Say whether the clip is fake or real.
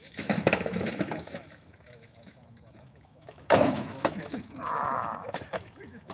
fake